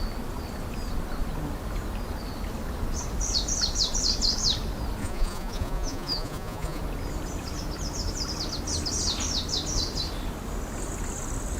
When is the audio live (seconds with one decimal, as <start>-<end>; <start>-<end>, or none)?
0.0-5.0; 6.8-11.6